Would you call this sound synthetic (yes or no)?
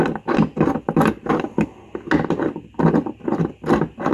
no